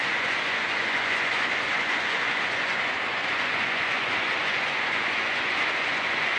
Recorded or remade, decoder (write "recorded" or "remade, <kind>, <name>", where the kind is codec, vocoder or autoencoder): remade, vocoder, Vocos